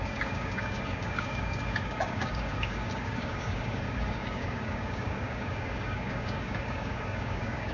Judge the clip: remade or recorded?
remade